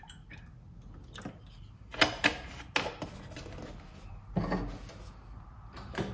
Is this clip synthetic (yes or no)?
no